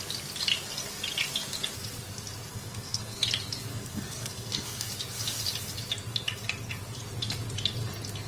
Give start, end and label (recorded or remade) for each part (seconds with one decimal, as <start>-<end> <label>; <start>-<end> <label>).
0.0-2.5 recorded; 2.5-3.2 remade; 3.2-3.7 recorded; 3.7-4.9 remade; 4.9-8.3 recorded